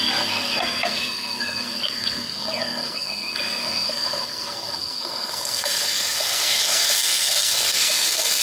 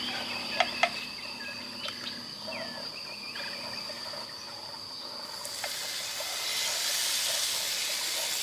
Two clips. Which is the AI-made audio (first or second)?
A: first